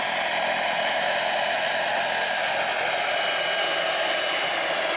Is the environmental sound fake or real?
real